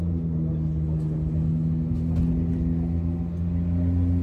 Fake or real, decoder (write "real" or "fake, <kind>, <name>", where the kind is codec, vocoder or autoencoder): real